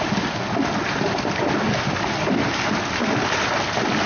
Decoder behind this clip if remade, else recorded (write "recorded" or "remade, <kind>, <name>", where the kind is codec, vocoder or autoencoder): recorded